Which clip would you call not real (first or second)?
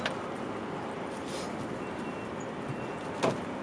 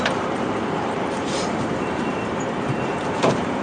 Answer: second